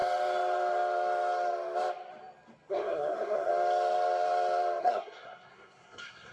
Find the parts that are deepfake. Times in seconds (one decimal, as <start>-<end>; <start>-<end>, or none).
2.7-3.5; 4.8-6.3